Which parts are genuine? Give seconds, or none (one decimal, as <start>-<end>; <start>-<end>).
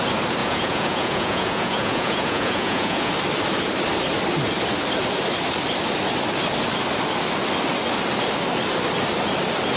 0.0-0.4; 3.1-9.8